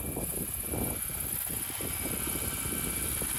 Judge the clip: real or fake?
real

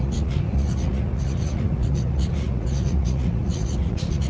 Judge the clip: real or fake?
fake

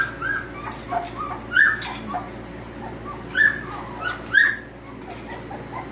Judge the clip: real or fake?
real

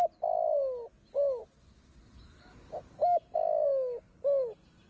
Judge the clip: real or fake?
real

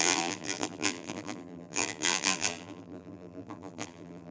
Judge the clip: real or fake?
fake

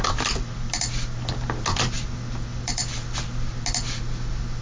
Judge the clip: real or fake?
real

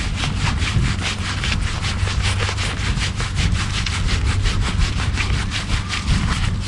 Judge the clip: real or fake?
real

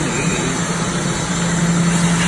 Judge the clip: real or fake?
real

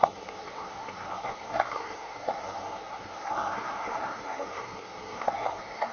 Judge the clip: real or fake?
fake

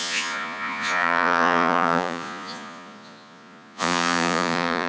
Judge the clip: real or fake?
fake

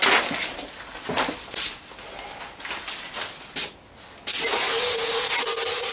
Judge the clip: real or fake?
real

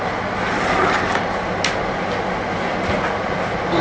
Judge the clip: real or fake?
real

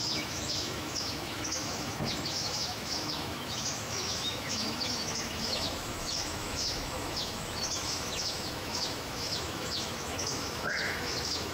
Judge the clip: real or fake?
fake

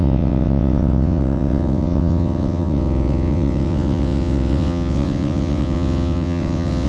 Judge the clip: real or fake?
fake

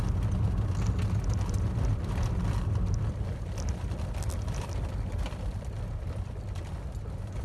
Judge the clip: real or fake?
real